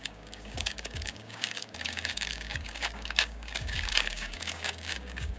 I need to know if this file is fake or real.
fake